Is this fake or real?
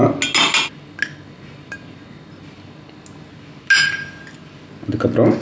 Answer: real